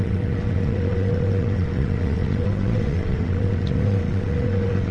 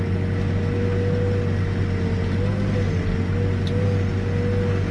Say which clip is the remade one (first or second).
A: first